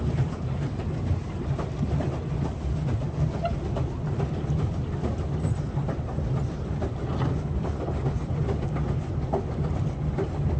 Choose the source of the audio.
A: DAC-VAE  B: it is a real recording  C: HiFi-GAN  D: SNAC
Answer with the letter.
B